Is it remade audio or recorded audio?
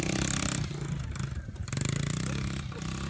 recorded